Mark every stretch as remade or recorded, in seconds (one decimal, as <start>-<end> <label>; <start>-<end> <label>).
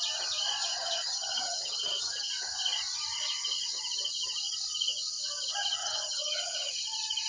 0.0-0.6 recorded; 0.6-2.3 remade; 2.3-5.8 recorded; 5.8-6.7 remade; 6.7-7.3 recorded